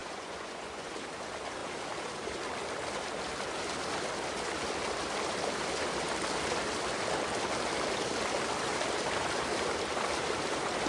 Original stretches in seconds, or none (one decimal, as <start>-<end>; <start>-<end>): 0.9-10.9